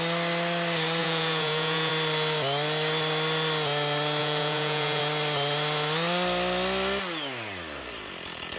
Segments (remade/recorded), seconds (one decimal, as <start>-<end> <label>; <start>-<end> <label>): 0.0-1.0 recorded; 1.0-1.9 remade; 1.9-4.2 recorded; 4.2-5.0 remade; 5.0-8.6 recorded